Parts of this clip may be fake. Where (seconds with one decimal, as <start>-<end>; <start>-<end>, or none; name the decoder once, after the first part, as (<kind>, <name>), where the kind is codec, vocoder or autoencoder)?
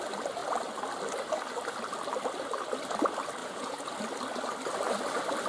3.4-3.9 (vocoder, Vocos)